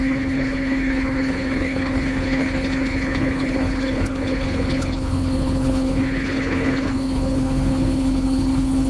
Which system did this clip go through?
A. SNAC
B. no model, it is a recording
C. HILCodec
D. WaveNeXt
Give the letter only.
C